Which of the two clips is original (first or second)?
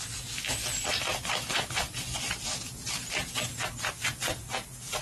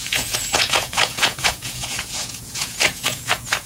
first